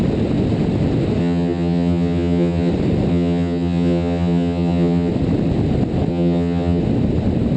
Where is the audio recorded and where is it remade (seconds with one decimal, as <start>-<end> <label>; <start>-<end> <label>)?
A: 0.0-1.2 recorded; 1.2-2.7 remade; 2.7-3.1 recorded; 3.1-5.1 remade; 5.1-6.1 recorded; 6.1-6.8 remade; 6.8-7.6 recorded